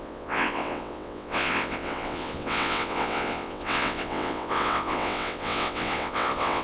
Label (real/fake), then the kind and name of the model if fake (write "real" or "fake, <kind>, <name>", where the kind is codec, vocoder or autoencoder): fake, vocoder, WaveNeXt